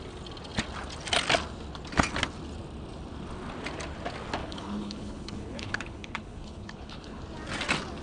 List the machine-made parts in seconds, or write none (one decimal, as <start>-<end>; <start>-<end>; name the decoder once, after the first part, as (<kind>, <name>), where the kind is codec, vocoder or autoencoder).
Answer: 4.4-7.2 (codec, HILCodec)